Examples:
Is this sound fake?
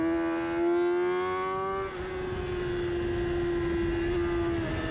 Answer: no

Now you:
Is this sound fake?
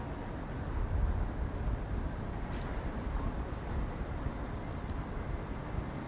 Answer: no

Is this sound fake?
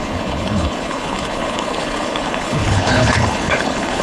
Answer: yes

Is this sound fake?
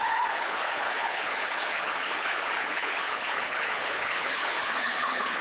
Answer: yes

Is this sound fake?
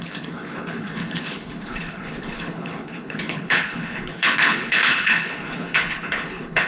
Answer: yes